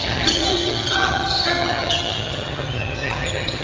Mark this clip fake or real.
fake